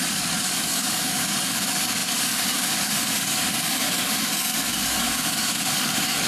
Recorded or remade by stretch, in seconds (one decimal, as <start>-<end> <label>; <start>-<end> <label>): 0.0-6.3 remade